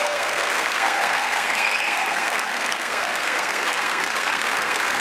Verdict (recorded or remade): remade